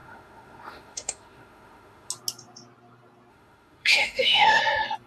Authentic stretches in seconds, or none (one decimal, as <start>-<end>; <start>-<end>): 2.1-3.3; 4.6-5.1

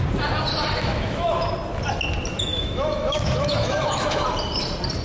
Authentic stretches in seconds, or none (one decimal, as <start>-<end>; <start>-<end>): 0.0-0.5; 1.5-2.5; 4.2-5.0